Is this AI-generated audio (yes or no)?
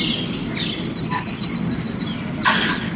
no